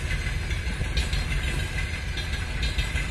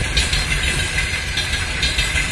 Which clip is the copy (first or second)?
second